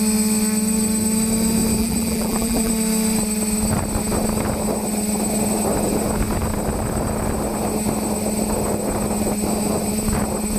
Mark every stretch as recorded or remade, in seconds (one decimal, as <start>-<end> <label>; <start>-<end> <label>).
0.0-1.8 recorded; 1.8-2.7 remade; 2.7-10.6 recorded